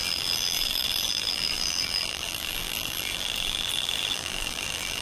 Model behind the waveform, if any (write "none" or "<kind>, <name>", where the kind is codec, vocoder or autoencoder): vocoder, BigVGAN v2